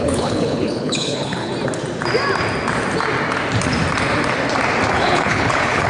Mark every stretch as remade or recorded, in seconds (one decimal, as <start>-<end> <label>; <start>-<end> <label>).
0.0-1.5 remade; 1.5-4.9 recorded; 4.9-5.9 remade